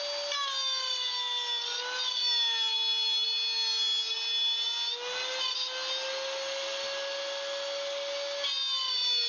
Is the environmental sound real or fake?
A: real